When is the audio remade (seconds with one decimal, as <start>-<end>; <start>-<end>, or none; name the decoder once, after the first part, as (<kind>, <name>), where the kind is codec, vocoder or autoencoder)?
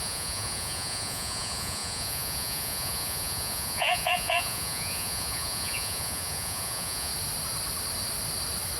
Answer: 0.0-7.1 (vocoder, Vocos)